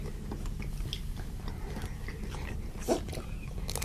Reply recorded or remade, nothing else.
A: recorded